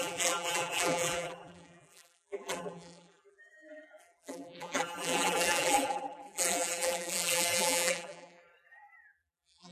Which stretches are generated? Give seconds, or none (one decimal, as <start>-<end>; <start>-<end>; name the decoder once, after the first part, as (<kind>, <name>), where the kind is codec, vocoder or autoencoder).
0.0-9.7 (vocoder, BigVGAN v2)